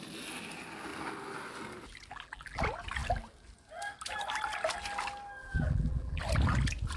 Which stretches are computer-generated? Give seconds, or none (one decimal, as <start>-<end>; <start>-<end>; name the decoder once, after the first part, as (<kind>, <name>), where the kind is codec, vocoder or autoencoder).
2.1-2.6 (vocoder, BigVGAN v2); 5.4-6.2